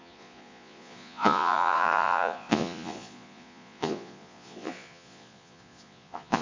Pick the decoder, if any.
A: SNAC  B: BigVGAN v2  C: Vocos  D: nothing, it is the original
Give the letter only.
C